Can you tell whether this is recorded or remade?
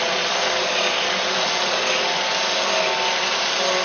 recorded